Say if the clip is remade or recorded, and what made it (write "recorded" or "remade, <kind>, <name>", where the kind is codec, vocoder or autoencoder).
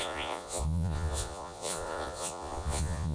remade, vocoder, Vocos